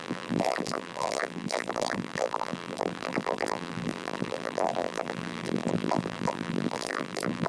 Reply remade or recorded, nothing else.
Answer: remade